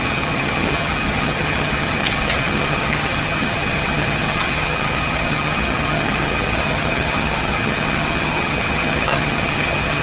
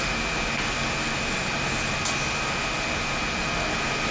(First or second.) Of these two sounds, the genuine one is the second